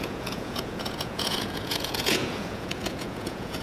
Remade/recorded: remade